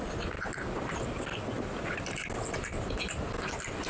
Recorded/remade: recorded